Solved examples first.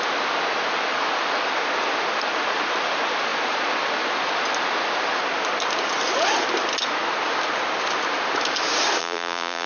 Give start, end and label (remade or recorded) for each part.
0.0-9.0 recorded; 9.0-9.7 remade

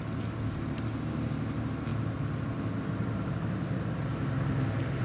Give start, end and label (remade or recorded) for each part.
0.0-5.0 recorded

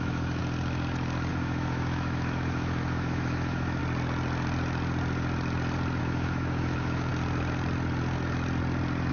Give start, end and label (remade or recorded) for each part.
0.0-0.4 remade; 0.4-1.3 recorded; 1.3-3.8 remade; 3.8-6.0 recorded; 6.0-7.1 remade; 7.1-9.1 recorded

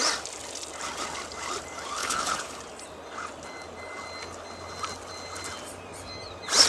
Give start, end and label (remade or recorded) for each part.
0.0-2.0 recorded; 2.0-2.6 remade; 2.6-6.7 recorded

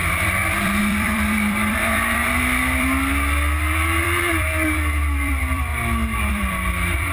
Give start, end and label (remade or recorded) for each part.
0.0-5.7 remade; 5.7-6.3 recorded; 6.3-7.1 remade